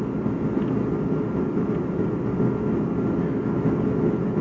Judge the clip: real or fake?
real